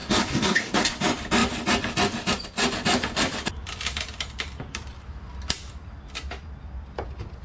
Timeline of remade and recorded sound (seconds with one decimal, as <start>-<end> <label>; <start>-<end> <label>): 0.0-0.9 remade; 0.9-7.4 recorded